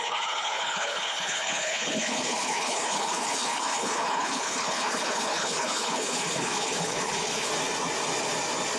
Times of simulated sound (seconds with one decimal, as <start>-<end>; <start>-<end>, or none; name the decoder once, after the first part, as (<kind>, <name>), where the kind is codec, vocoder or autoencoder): 0.0-7.5 (codec, HILCodec)

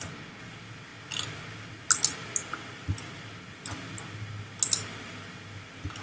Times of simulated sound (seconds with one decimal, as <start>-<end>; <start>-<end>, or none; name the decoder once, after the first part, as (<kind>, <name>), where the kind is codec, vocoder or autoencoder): none

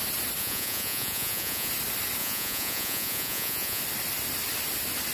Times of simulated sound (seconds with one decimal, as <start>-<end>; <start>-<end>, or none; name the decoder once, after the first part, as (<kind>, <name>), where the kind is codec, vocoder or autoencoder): 0.4-1.7 (vocoder, Vocos); 2.2-3.8

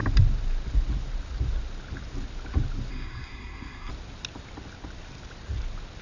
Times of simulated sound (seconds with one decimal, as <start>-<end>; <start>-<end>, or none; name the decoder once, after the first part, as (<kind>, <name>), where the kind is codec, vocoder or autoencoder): 2.9-3.9 (codec, SNAC)

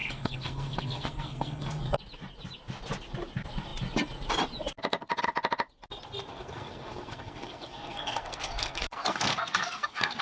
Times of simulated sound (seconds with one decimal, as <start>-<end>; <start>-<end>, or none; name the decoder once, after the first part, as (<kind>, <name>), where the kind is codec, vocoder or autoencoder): 0.0-2.0 (codec, SNAC); 6.3-10.2

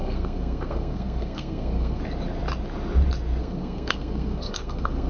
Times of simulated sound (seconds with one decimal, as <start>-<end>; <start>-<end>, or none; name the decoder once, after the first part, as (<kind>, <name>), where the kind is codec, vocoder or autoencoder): 0.0-2.0 (codec, SNAC); 3.4-5.1